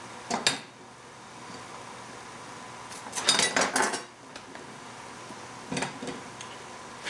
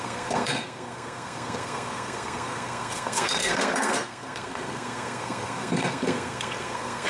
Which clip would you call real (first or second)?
first